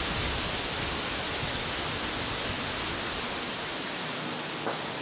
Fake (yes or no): no